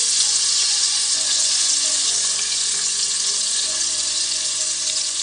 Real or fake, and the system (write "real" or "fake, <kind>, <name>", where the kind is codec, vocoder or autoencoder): fake, vocoder, Vocos